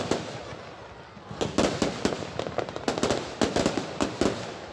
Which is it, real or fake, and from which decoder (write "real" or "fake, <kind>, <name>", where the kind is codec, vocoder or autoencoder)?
real